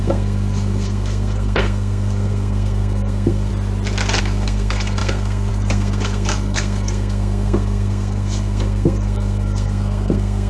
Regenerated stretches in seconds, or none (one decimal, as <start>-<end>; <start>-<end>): 0.0-3.5; 4.2-10.5